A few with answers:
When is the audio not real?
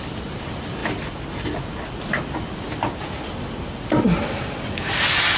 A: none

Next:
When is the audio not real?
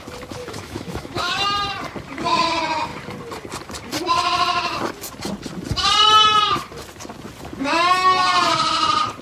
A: 0.4-1.4 (autoencoder, DAC-VAE)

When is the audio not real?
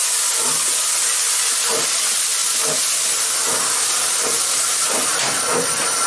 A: 1.8-2.4 (vocoder, BigVGAN v2); 5.6-6.1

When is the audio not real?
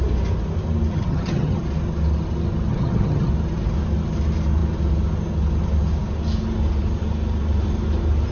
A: 0.9-1.6 (vocoder, HiFi-GAN); 2.7-3.3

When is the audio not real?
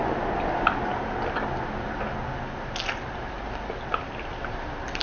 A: none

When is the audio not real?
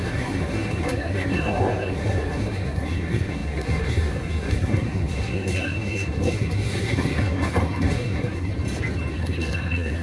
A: 0.0-8.5 (codec, SNAC); 9.1-10.0